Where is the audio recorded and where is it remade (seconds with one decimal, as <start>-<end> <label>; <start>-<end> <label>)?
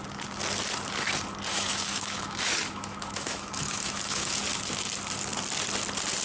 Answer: 0.0-1.5 recorded; 1.5-4.4 remade; 4.4-6.2 recorded